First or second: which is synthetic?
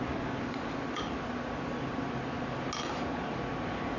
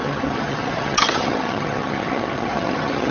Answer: second